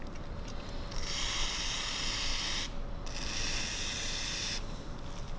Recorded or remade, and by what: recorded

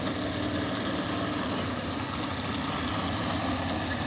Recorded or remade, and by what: recorded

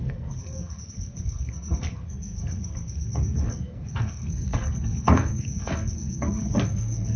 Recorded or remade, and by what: remade, codec, SNAC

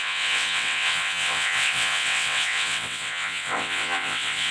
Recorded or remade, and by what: remade, vocoder, WaveNeXt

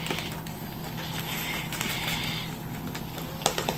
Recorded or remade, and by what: recorded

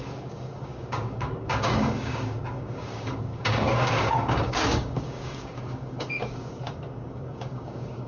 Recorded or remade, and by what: remade, codec, DAC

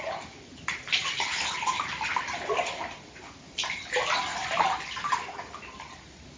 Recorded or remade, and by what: recorded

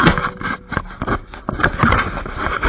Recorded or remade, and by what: recorded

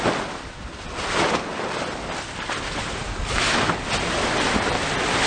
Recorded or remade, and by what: recorded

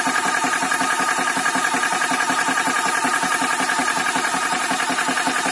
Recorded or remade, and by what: recorded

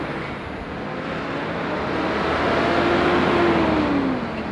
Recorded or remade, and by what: recorded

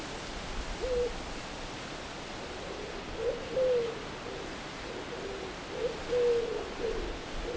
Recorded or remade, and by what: recorded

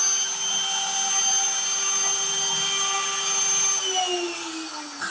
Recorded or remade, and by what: recorded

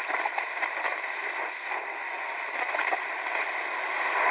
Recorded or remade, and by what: remade, vocoder, BigVGAN v2